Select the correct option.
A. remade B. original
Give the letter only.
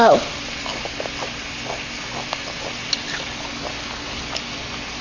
B